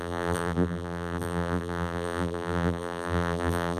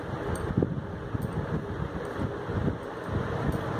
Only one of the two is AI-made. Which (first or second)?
first